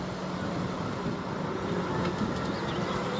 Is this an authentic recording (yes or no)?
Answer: yes